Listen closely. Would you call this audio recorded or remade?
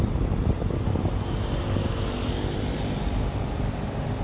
recorded